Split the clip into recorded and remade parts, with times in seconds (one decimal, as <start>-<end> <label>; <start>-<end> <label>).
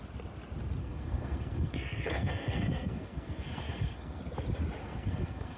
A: 0.0-0.8 recorded; 0.8-4.2 remade; 4.2-4.8 recorded; 4.8-5.6 remade